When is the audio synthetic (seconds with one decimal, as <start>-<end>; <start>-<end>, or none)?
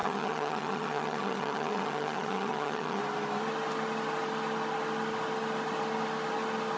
0.0-3.0